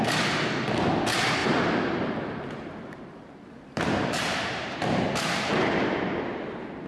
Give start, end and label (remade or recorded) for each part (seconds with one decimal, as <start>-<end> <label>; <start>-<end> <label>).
0.0-1.4 recorded; 1.4-5.5 remade; 5.5-6.9 recorded